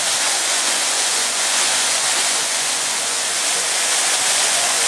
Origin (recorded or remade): remade